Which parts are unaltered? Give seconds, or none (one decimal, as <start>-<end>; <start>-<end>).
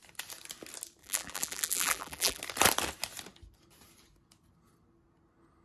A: 0.0-1.0; 2.4-5.6